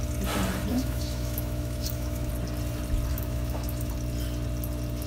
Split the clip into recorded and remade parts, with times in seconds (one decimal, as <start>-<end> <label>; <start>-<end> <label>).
0.0-0.7 recorded; 0.7-2.3 remade; 2.3-3.1 recorded; 3.1-3.9 remade; 3.9-5.1 recorded